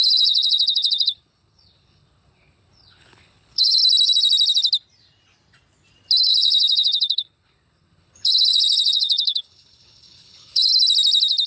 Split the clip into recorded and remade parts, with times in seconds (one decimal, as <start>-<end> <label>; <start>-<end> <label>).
0.0-3.8 remade; 3.8-6.3 recorded; 6.3-10.7 remade; 10.7-11.5 recorded